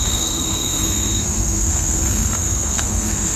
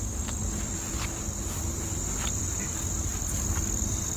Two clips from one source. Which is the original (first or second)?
second